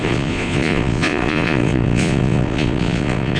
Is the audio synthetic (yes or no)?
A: yes